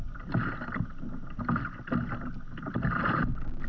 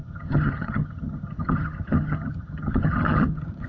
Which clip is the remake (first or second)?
second